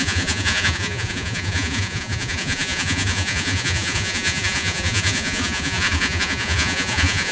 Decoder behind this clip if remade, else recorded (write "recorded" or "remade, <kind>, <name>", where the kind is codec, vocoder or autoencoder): remade, vocoder, Vocos